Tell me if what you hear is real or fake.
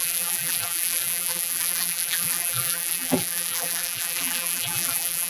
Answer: fake